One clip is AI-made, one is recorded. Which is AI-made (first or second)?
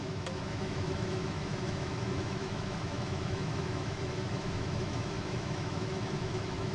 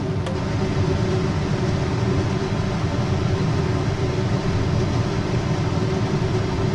first